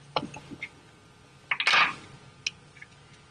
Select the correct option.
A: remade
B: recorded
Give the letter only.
B